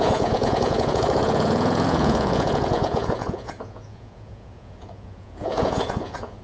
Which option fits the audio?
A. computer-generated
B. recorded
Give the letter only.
A